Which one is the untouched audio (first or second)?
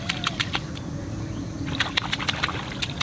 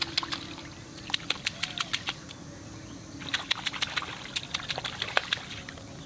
second